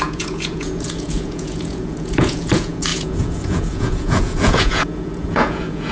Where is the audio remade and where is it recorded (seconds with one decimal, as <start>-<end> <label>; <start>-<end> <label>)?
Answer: 0.0-5.9 remade